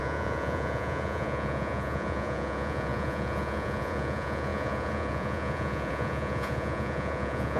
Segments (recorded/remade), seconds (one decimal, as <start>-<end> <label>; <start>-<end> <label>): 0.0-7.6 remade